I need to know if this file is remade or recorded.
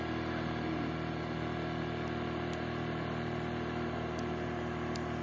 recorded